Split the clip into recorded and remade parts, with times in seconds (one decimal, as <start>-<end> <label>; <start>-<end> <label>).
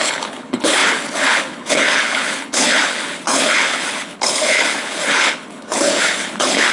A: 0.0-6.7 remade